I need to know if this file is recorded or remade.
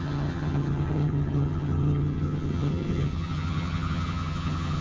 remade